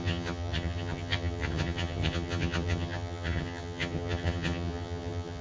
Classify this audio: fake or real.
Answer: fake